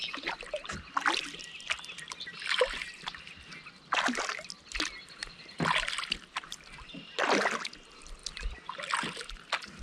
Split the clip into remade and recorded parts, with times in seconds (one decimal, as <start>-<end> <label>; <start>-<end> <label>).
0.0-5.2 recorded; 5.2-7.2 remade; 7.2-9.8 recorded